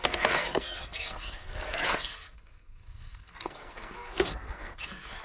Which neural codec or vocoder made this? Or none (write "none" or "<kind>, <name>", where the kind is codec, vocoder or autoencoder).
codec, SNAC